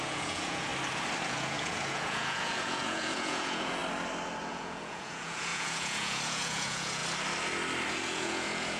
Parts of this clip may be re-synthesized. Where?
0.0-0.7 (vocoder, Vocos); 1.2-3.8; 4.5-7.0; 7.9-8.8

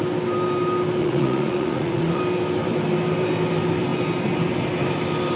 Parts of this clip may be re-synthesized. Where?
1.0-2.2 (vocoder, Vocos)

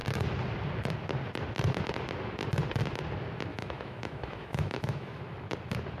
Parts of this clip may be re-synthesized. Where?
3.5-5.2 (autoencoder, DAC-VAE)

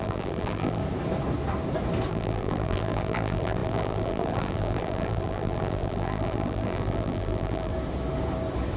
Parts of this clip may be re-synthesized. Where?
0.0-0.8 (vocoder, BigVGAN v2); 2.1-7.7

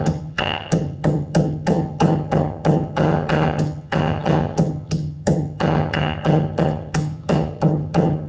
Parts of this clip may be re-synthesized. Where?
0.0-8.3 (vocoder, HiFi-GAN)

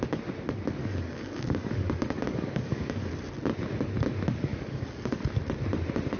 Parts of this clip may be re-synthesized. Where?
0.8-3.1 (codec, DAC); 4.5-5.2